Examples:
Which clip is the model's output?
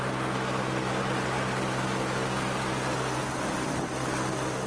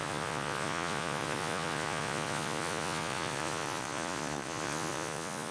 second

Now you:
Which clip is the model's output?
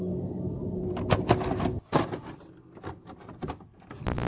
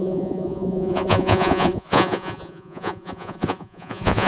second